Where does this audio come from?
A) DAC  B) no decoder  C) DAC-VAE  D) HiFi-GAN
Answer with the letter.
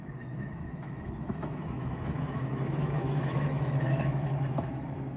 C